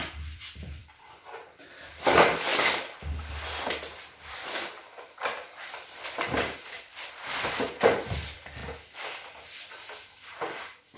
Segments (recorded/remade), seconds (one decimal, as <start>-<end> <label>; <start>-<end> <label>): 0.0-2.5 remade; 2.5-5.8 recorded; 5.8-8.6 remade; 8.6-11.0 recorded